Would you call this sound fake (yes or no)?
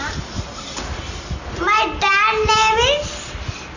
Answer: no